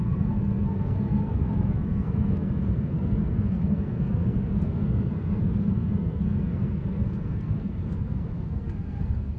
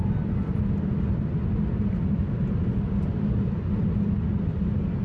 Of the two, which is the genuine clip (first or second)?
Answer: second